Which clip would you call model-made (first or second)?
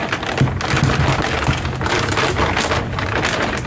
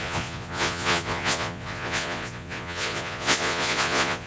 second